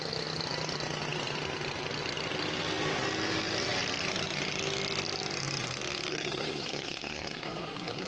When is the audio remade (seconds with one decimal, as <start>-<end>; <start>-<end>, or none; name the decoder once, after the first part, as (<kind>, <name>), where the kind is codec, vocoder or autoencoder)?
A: 6.1-8.1 (codec, SNAC)